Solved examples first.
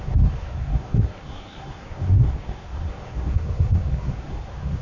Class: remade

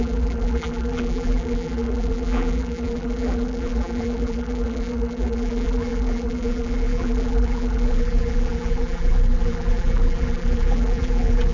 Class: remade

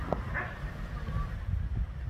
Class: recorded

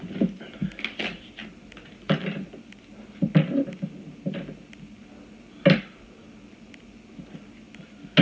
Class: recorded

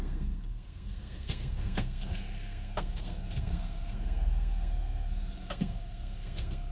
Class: remade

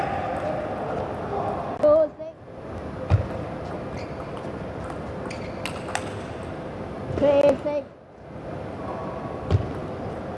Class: recorded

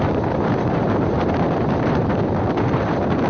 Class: remade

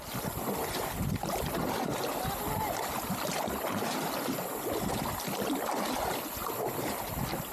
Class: recorded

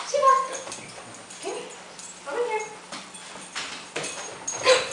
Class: recorded